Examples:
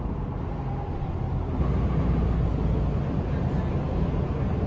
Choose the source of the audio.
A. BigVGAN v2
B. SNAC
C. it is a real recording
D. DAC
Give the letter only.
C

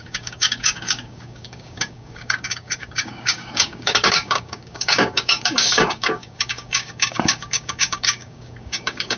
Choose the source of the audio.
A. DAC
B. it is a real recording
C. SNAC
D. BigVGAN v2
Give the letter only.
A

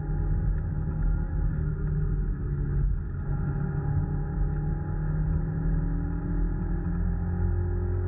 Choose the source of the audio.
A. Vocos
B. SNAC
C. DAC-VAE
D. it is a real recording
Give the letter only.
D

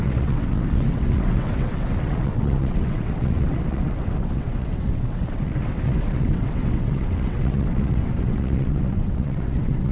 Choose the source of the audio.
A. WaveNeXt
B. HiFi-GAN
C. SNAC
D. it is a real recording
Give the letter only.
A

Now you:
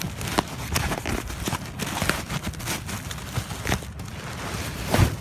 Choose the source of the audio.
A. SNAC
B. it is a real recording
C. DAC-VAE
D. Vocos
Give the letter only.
B